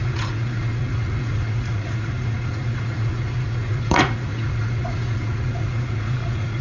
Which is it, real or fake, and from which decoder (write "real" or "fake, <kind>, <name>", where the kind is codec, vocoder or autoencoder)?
fake, vocoder, Vocos